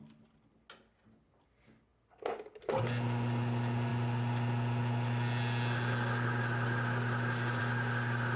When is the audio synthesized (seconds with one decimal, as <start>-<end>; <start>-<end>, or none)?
none